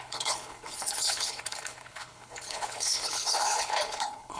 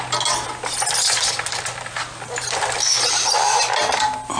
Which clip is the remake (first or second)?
first